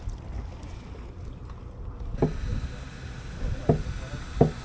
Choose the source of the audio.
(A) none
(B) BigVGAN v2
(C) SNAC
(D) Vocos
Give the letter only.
A